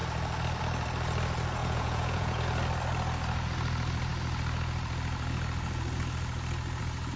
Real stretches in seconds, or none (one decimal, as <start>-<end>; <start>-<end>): 0.0-1.6; 2.4-7.2